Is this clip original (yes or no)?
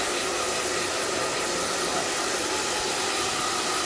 yes